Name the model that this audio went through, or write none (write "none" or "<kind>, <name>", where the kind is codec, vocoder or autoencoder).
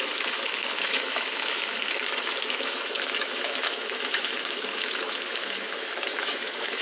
autoencoder, DAC-VAE